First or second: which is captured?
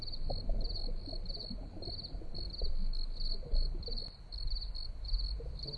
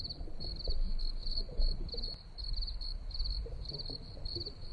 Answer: first